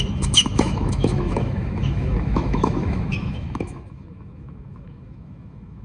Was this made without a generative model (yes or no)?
no